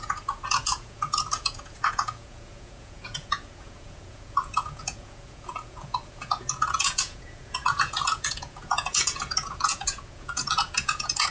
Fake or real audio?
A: fake